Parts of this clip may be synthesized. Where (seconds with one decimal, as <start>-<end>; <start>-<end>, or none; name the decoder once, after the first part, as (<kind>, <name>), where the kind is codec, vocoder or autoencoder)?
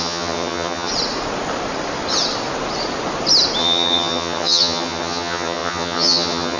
0.0-0.9 (vocoder, HiFi-GAN); 3.6-6.6